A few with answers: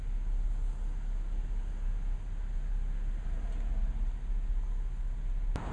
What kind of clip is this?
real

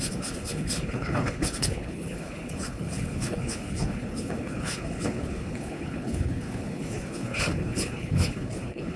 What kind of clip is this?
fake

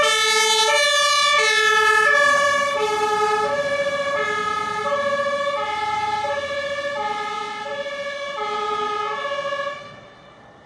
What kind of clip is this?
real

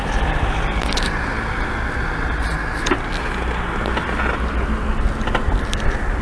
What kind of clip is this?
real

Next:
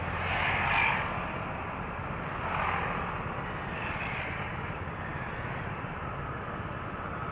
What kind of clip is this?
real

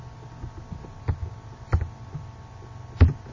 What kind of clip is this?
real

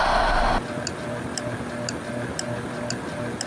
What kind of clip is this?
real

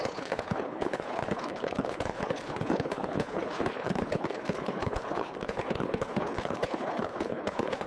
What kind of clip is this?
fake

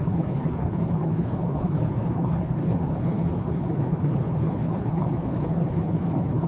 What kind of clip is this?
fake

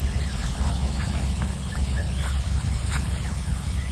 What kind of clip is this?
fake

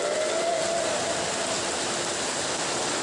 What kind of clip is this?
real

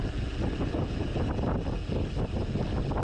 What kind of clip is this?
real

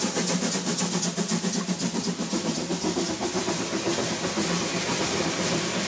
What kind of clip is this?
real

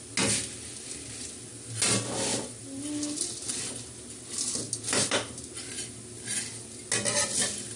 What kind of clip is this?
real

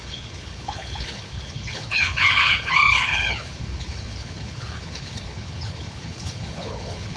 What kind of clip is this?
fake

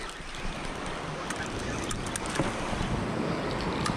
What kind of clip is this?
real